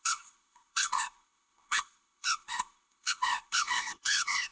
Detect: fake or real fake